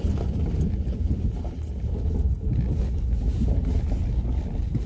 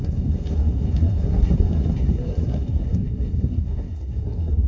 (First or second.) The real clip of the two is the first